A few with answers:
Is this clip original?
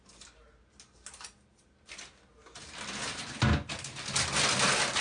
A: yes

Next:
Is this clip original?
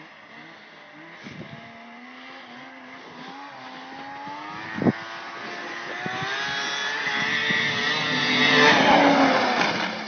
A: yes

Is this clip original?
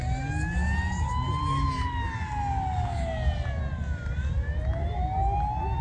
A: yes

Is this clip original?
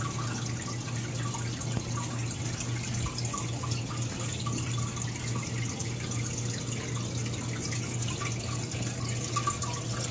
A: yes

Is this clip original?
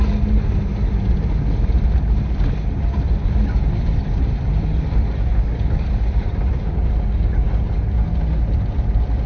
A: yes